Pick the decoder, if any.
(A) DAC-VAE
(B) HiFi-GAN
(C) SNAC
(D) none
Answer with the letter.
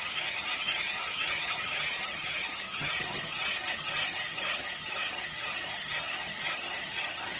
B